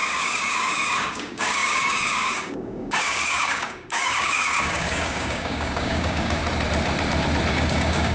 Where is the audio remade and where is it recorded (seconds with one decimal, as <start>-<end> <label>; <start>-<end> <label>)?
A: 0.0-6.4 remade; 6.4-7.5 recorded; 7.5-8.1 remade